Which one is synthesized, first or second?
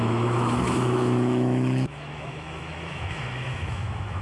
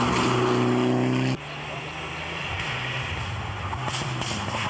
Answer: first